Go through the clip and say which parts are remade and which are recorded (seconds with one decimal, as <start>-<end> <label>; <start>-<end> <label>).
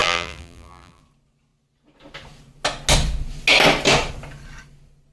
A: 0.0-1.0 remade; 1.0-5.1 recorded